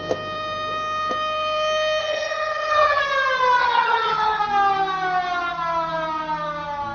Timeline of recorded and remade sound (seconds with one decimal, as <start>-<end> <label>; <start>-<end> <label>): 0.0-2.0 recorded; 2.0-3.0 remade; 3.0-3.6 recorded; 3.6-4.4 remade; 4.4-6.9 recorded